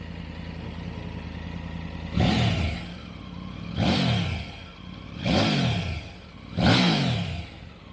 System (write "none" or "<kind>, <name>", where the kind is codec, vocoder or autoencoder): none